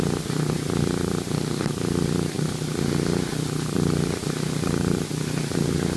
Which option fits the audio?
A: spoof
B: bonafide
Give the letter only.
B